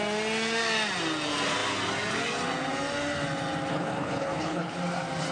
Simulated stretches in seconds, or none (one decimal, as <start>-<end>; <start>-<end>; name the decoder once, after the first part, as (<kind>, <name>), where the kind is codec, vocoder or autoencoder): 3.7-4.8 (codec, HILCodec)